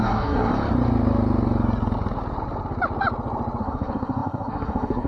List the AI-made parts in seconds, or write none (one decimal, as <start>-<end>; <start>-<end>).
0.0-0.5; 3.6-5.1